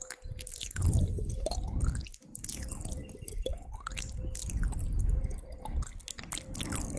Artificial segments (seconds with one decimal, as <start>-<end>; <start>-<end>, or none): 0.0-7.0